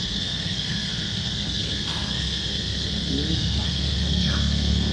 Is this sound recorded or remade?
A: remade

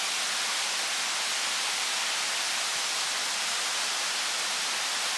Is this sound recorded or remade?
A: recorded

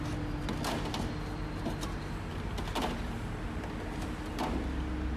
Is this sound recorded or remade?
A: recorded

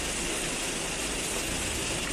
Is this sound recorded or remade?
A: recorded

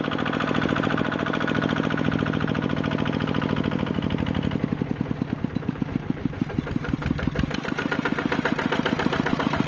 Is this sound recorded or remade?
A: recorded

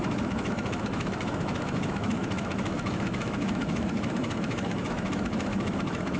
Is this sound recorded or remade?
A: remade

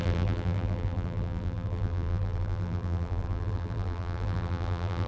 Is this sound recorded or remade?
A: remade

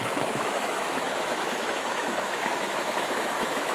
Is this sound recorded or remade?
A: remade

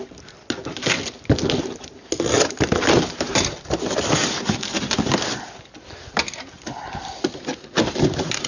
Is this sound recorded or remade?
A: recorded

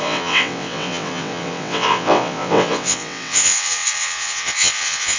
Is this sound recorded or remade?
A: remade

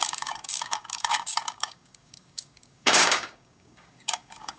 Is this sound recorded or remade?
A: remade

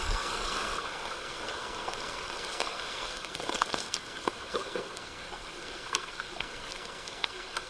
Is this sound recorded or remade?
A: remade